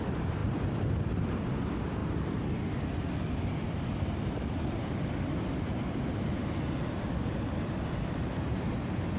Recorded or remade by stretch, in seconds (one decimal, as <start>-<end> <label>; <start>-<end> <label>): 0.0-9.2 recorded